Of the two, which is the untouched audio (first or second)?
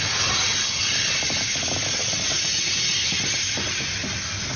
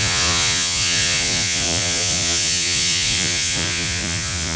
first